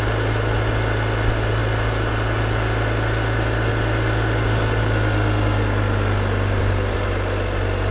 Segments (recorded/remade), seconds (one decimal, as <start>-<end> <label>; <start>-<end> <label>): 0.0-7.9 recorded